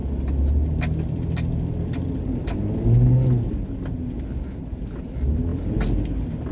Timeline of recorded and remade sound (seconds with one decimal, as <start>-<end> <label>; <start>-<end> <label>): 0.0-6.5 recorded

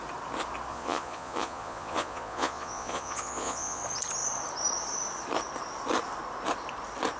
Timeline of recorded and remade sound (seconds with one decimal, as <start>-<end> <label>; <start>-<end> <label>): 0.0-0.7 recorded; 0.7-3.8 remade; 3.8-7.2 recorded

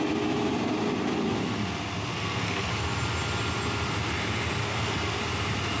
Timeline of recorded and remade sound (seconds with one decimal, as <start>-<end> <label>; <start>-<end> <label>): 0.0-2.1 recorded; 2.1-2.7 remade; 2.7-4.6 recorded; 4.6-5.2 remade; 5.2-5.8 recorded

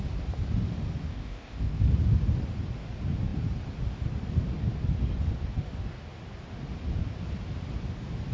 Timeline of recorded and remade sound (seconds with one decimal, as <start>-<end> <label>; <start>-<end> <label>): 0.0-1.1 recorded; 1.1-1.8 remade; 1.8-8.3 recorded

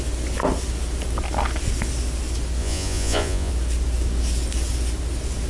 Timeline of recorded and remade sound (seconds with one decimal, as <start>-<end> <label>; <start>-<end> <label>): 0.0-2.6 recorded; 2.6-3.5 remade; 3.5-5.5 recorded